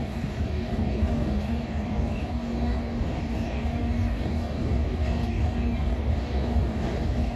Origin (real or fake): fake